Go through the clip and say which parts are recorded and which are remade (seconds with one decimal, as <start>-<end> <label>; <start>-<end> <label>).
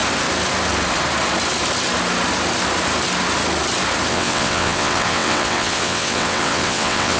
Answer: 0.0-4.1 recorded; 4.1-7.2 remade